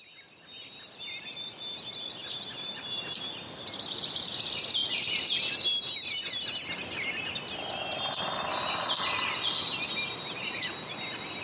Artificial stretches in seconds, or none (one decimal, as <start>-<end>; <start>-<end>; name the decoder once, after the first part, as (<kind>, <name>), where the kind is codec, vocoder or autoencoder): 4.8-5.5 (vocoder, BigVGAN v2)